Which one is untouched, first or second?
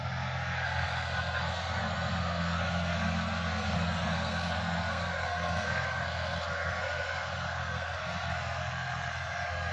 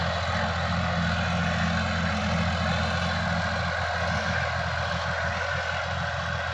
second